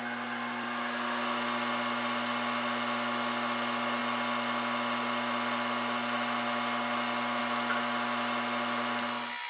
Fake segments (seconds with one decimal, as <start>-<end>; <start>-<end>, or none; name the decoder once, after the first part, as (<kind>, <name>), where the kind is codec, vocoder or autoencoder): none

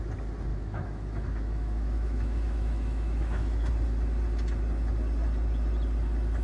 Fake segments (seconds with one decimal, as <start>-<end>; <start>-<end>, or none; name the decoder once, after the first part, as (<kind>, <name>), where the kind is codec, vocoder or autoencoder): 0.5-3.7 (autoencoder, DAC-VAE)

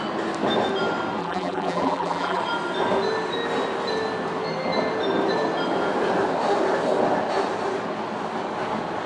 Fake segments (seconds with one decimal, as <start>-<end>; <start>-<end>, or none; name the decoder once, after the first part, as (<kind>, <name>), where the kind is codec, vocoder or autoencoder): 1.2-2.4 (vocoder, BigVGAN v2)

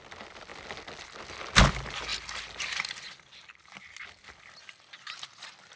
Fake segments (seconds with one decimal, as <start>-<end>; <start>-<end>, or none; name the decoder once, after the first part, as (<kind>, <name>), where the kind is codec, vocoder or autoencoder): none

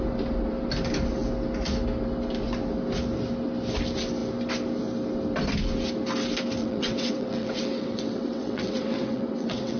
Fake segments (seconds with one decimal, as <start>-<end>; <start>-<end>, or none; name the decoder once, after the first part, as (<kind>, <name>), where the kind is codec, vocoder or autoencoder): 6.6-9.8 (vocoder, WaveNeXt)

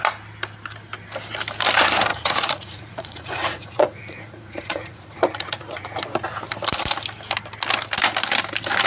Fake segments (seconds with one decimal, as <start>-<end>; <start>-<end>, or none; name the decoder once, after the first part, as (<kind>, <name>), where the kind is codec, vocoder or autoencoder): 2.1-6.0 (vocoder, Vocos)

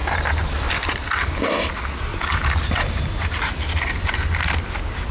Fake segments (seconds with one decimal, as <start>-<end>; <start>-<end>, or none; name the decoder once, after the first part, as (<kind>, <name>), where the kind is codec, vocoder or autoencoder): 0.0-1.0 (vocoder, BigVGAN v2); 2.1-3.3